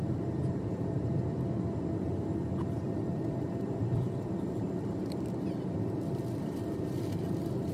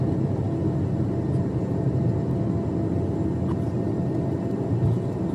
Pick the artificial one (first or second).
first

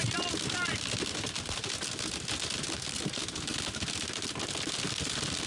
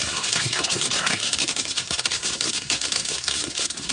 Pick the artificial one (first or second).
second